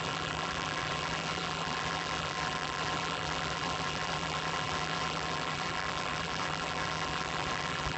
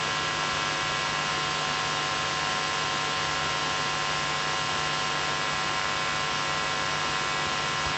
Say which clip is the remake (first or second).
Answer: first